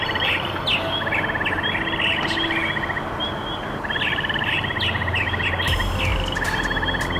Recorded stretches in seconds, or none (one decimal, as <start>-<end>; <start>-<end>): 0.0-7.2

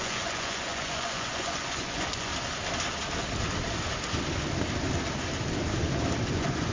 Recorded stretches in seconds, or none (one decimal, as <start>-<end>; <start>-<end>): 2.3-6.3

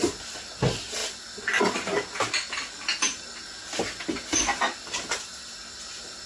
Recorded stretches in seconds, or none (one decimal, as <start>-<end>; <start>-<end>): 0.0-6.3

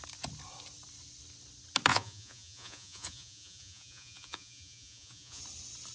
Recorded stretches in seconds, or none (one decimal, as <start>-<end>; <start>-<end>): 0.0-1.9; 5.4-5.9